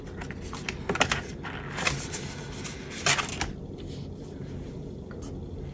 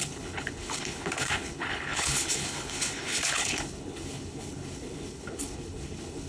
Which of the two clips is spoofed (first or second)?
second